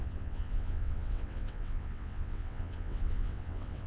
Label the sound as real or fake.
fake